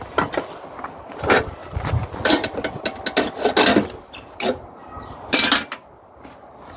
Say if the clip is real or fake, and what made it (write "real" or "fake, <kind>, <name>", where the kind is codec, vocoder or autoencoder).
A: real